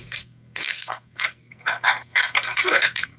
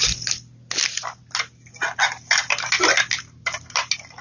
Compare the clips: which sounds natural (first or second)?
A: second